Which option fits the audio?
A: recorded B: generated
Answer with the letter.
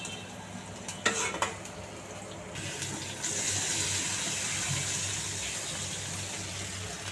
A